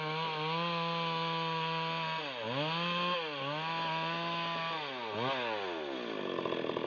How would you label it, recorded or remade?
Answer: recorded